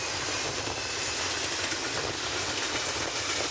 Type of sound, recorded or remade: recorded